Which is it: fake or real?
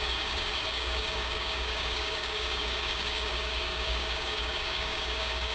fake